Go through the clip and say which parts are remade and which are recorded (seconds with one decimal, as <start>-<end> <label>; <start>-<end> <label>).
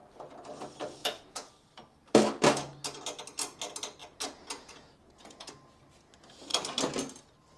0.0-1.0 recorded; 1.0-1.5 remade; 1.5-4.0 recorded; 4.0-5.5 remade; 5.5-7.6 recorded